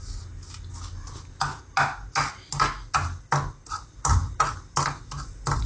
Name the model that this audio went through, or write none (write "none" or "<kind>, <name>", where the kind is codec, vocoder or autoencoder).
none